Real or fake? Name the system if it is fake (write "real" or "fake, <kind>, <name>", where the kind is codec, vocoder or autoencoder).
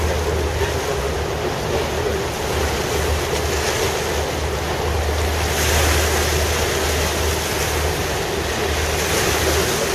real